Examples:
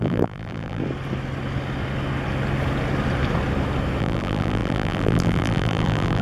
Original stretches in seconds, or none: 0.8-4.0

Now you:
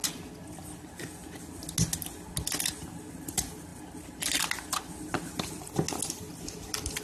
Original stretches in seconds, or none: 0.0-3.1; 3.7-6.1